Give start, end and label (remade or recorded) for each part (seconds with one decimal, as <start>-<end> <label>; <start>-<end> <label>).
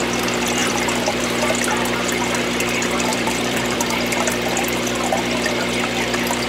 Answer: 0.0-0.6 recorded; 0.6-1.2 remade; 1.2-3.1 recorded; 3.1-4.3 remade; 4.3-6.5 recorded